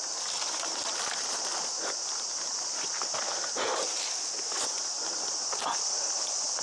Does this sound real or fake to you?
real